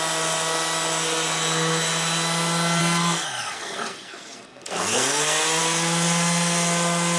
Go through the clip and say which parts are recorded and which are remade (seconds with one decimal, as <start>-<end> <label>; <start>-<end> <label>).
0.0-2.8 recorded; 2.8-5.6 remade; 5.6-7.2 recorded